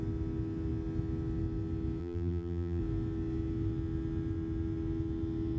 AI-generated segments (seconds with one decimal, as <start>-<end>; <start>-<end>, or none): 2.0-2.8